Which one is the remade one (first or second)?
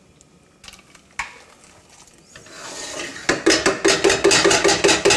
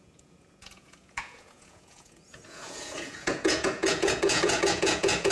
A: second